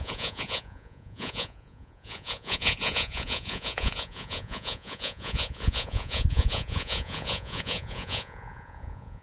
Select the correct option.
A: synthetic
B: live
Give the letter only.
A